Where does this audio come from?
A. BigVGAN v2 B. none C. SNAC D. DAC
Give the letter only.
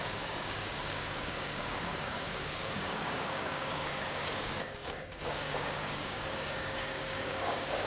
D